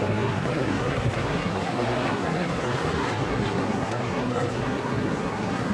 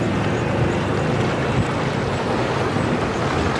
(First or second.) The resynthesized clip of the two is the first